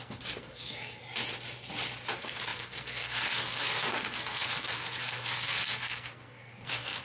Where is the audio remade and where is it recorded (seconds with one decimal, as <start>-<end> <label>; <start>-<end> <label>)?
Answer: 0.0-1.0 remade; 1.0-2.1 recorded; 2.1-7.0 remade